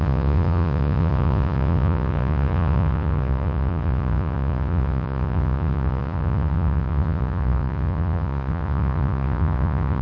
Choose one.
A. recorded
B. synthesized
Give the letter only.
B